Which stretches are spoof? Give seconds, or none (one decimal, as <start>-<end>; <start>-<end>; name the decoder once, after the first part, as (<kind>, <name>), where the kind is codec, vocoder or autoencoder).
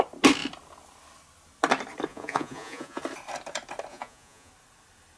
2.1-3.0 (vocoder, Vocos); 3.9-4.5